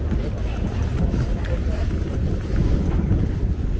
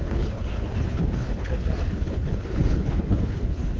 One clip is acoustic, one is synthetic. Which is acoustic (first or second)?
first